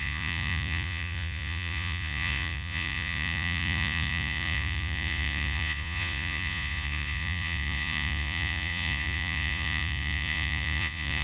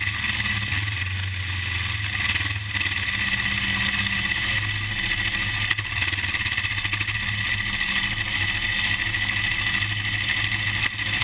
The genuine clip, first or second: second